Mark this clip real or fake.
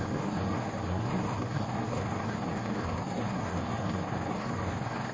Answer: fake